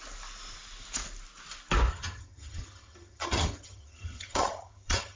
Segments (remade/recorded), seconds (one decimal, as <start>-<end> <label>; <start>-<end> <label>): 0.0-1.9 recorded; 1.9-5.2 remade